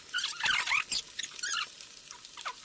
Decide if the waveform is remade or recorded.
recorded